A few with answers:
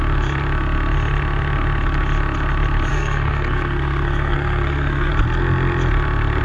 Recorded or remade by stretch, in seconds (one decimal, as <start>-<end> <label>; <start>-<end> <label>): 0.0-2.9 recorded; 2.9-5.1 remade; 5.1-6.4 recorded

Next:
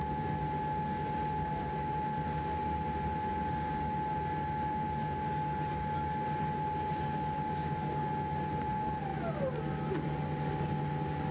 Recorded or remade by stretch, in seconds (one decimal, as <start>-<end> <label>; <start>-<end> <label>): 0.0-11.3 recorded

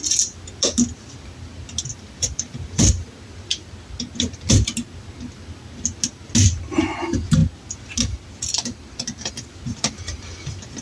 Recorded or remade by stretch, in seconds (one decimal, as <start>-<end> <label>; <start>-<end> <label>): 0.0-1.9 recorded; 1.9-3.1 remade; 3.1-10.8 recorded